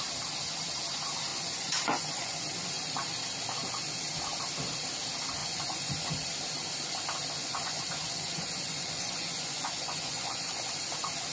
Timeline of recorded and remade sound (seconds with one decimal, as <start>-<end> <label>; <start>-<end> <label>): 0.0-1.3 recorded; 1.3-2.4 remade; 2.4-5.4 recorded; 5.4-6.1 remade; 6.1-7.4 recorded; 7.4-10.7 remade; 10.7-11.3 recorded